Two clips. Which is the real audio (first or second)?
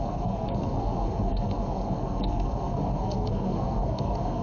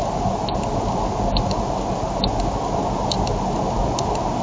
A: second